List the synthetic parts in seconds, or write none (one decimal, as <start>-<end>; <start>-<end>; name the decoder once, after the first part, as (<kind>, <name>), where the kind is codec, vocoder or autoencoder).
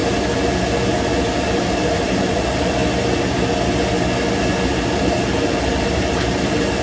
1.1-2.8 (vocoder, BigVGAN v2); 4.7-6.8